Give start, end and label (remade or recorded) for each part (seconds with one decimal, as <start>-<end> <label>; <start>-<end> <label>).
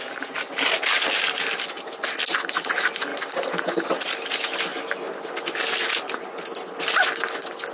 0.0-7.7 recorded